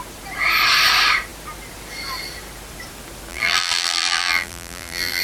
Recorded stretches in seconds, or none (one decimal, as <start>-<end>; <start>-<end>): 0.0-3.3